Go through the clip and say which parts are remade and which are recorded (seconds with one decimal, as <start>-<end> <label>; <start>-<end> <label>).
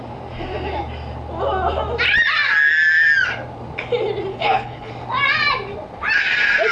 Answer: 0.0-4.3 recorded; 4.3-4.9 remade; 4.9-6.7 recorded